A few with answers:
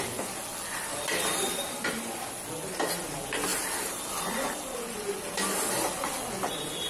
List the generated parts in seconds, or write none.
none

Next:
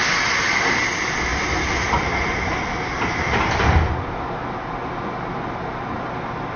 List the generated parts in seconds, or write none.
none

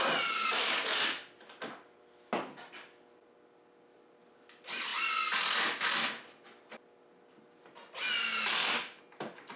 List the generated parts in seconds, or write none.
none